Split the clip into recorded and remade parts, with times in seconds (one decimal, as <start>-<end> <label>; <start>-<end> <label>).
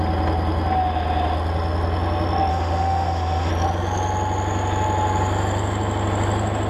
0.0-2.5 recorded; 2.5-3.5 remade; 3.5-6.7 recorded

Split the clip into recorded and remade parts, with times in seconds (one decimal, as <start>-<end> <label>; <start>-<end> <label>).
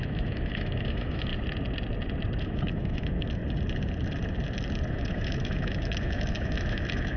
0.0-1.3 remade; 1.3-2.4 recorded; 2.4-3.4 remade; 3.4-4.9 recorded; 4.9-7.2 remade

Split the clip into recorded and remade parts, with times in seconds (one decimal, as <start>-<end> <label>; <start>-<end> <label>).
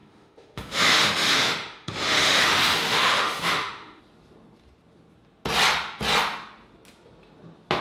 0.0-4.0 remade; 4.0-7.8 recorded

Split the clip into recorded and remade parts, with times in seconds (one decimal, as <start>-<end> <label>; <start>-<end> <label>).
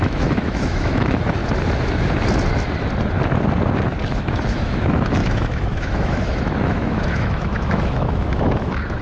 0.0-1.4 remade; 1.4-4.0 recorded; 4.0-9.0 remade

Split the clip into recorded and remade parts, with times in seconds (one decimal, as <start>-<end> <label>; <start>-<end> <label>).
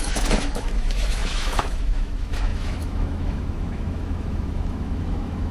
0.0-5.5 remade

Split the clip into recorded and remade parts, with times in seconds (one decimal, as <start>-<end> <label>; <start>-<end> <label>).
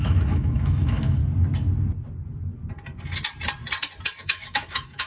0.0-1.2 remade; 1.2-4.2 recorded; 4.2-5.1 remade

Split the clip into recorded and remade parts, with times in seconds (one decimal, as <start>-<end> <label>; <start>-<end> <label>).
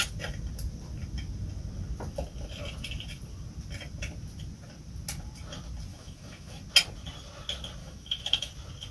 0.0-5.9 recorded; 5.9-6.6 remade; 6.6-7.8 recorded; 7.8-8.5 remade; 8.5-8.9 recorded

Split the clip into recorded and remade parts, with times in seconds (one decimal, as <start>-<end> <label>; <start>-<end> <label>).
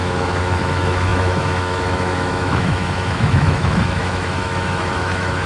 0.0-5.5 remade